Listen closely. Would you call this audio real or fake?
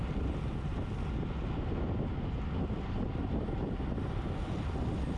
real